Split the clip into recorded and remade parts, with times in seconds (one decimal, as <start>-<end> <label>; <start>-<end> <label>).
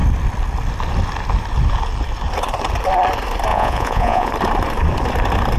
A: 0.0-3.5 recorded; 3.5-4.3 remade; 4.3-5.6 recorded